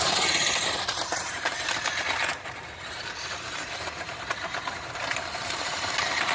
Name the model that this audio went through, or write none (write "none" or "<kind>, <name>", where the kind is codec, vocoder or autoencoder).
vocoder, BigVGAN v2